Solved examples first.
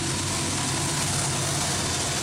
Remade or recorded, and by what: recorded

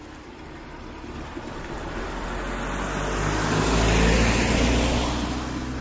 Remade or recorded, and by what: recorded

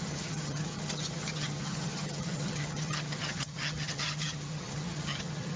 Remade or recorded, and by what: remade, vocoder, HiFi-GAN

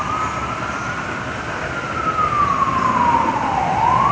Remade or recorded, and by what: recorded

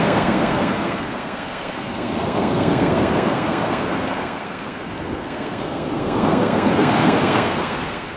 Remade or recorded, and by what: remade, codec, SNAC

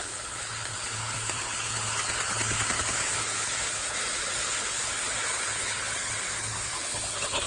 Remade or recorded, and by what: remade, codec, HILCodec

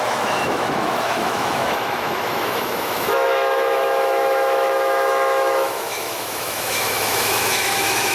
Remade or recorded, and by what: remade, autoencoder, DAC-VAE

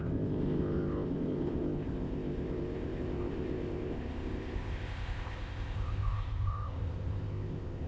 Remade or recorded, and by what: remade, codec, ZipCodec